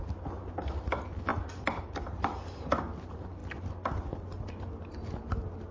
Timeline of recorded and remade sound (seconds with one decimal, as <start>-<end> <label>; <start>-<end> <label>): 0.0-5.7 recorded